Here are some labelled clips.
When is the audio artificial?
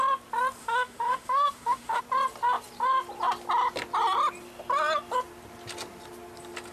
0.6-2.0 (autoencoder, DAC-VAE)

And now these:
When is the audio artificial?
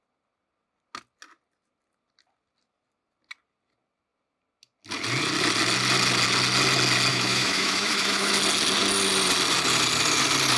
7.1-8.3 (autoencoder, DAC-VAE)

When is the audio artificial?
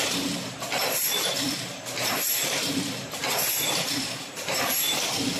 2.0-4.3 (vocoder, BigVGAN v2)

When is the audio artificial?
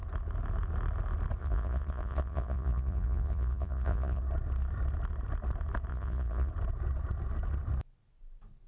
1.4-4.2 (vocoder, Vocos); 5.9-6.5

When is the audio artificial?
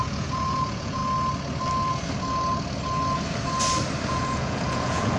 0.0-1.0 (vocoder, Vocos); 4.1-5.2